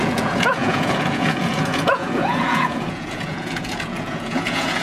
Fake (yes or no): yes